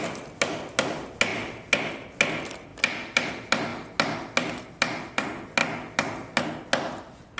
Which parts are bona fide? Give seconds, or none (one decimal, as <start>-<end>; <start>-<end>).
0.0-7.4